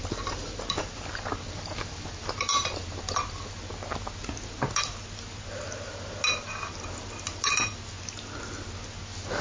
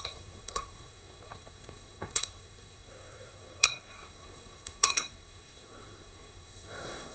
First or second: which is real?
first